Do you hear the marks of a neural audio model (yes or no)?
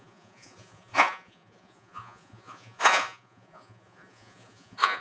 yes